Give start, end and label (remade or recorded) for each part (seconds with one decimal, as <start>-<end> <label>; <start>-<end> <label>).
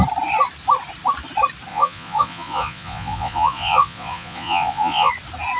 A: 0.0-1.7 recorded; 1.7-5.1 remade; 5.1-5.6 recorded